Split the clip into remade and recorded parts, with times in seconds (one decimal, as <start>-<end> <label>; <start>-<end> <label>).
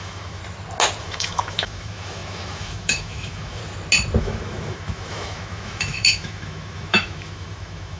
0.0-0.4 remade; 0.4-1.0 recorded; 1.0-3.6 remade; 3.6-4.2 recorded; 4.2-8.0 remade